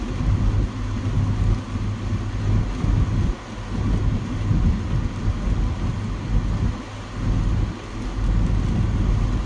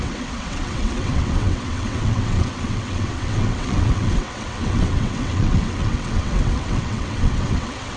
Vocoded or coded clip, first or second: second